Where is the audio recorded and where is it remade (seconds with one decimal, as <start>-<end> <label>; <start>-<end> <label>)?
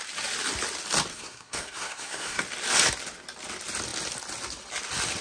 0.0-1.1 recorded; 1.1-2.4 remade; 2.4-5.2 recorded